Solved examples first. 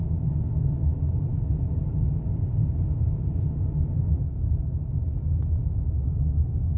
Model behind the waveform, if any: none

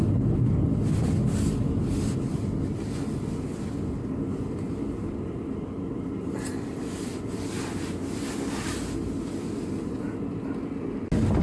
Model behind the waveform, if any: none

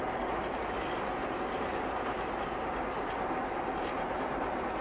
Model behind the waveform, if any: none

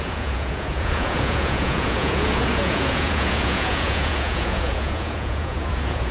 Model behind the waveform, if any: vocoder, Vocos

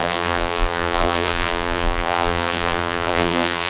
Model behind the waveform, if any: vocoder, BigVGAN v2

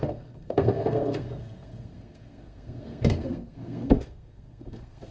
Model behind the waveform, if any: codec, SNAC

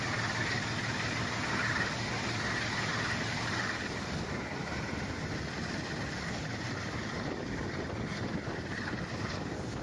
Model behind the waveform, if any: none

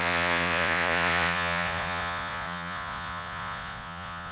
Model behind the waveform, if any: vocoder, Vocos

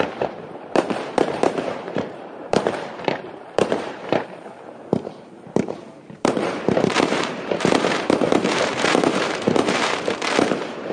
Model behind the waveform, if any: vocoder, BigVGAN v2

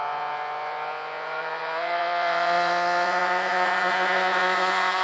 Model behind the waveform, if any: vocoder, Vocos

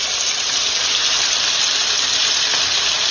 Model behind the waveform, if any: none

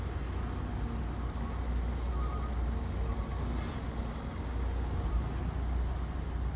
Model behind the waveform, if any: none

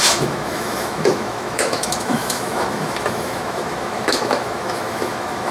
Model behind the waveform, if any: autoencoder, DAC-VAE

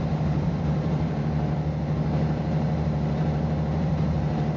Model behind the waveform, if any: vocoder, BigVGAN v2